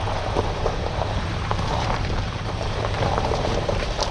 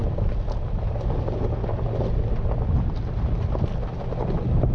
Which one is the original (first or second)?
second